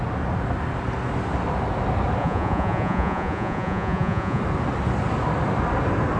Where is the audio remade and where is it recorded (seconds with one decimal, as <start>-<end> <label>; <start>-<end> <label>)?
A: 0.0-2.2 recorded; 2.2-4.4 remade; 4.4-6.2 recorded